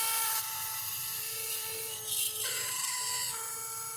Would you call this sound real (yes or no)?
yes